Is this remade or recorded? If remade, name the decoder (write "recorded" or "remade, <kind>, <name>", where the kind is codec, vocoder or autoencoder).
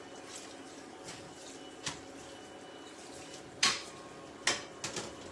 recorded